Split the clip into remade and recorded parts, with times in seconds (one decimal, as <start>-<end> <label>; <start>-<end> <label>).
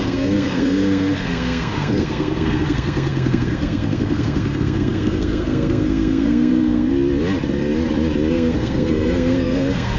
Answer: 0.0-6.9 remade; 6.9-8.3 recorded; 8.3-10.0 remade